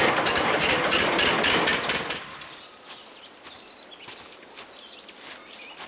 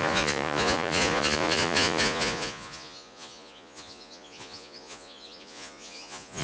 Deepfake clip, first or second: second